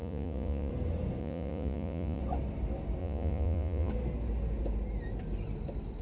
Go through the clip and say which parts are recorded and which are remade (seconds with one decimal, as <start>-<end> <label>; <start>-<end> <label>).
0.0-0.7 remade; 0.7-1.2 recorded; 1.2-2.2 remade; 2.2-3.0 recorded; 3.0-3.9 remade; 3.9-6.0 recorded